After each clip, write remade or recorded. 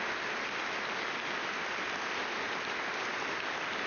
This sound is recorded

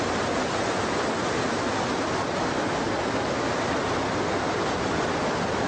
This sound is recorded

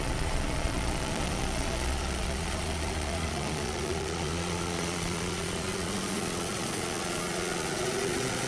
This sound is remade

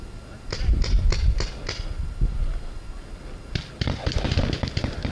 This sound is recorded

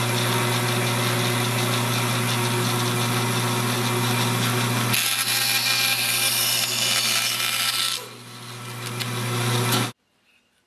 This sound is recorded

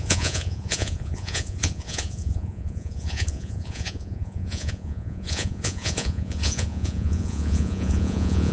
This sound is remade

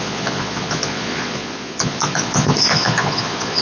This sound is remade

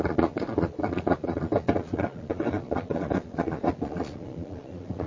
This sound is remade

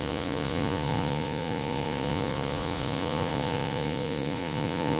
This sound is remade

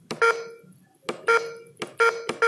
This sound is recorded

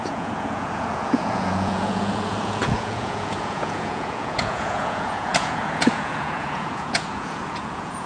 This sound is remade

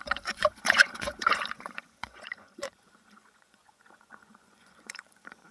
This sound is remade